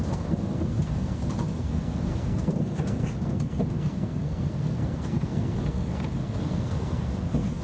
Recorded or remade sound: remade